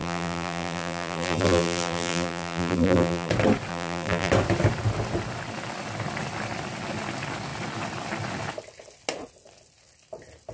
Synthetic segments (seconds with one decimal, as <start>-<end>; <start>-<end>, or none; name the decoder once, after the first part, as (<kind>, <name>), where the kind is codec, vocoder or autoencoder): 0.0-3.3 (vocoder, BigVGAN v2); 3.7-4.3